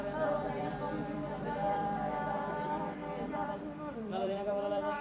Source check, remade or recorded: remade